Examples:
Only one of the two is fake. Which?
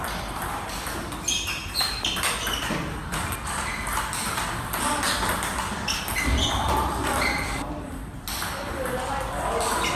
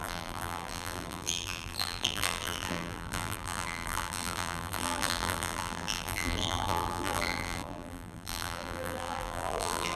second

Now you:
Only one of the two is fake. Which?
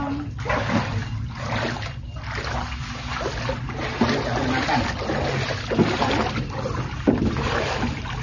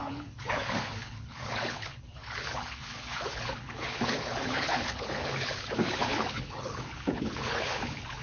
second